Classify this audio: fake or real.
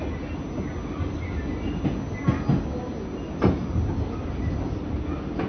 real